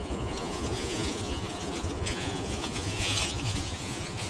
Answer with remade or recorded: remade